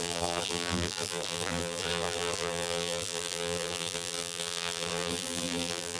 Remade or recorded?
remade